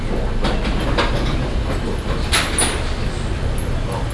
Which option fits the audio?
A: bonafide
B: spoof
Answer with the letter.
A